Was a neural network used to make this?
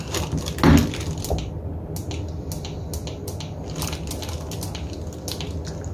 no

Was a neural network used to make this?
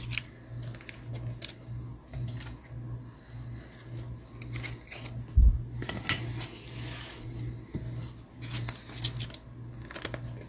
no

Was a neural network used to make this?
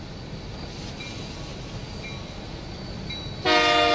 no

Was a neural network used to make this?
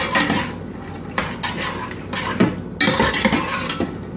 no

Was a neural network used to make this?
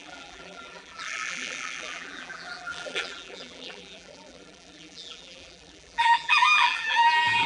yes